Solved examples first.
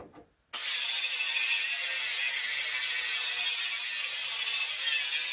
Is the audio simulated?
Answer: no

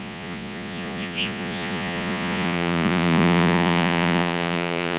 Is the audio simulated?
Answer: yes